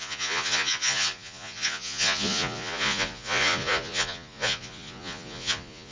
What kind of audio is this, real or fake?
fake